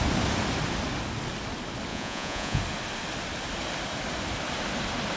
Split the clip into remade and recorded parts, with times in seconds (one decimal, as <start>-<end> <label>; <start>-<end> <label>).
0.0-1.9 recorded; 1.9-2.6 remade; 2.6-5.2 recorded